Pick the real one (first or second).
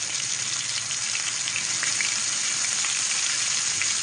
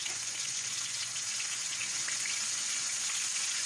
first